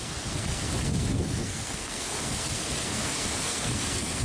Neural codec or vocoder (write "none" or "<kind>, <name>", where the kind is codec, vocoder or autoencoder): codec, SNAC